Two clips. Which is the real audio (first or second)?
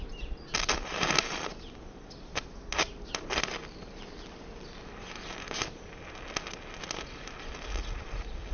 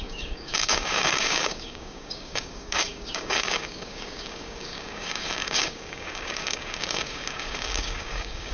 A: first